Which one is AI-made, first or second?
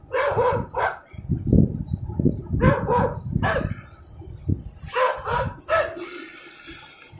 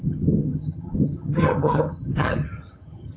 second